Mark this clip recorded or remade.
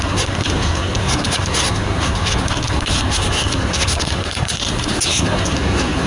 remade